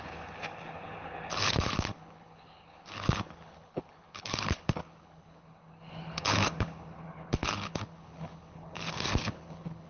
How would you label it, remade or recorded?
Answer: remade